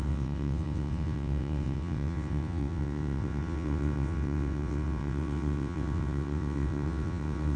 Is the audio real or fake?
fake